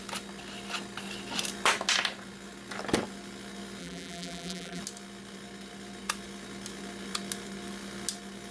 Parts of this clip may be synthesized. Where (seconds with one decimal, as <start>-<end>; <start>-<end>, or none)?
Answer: 3.8-4.8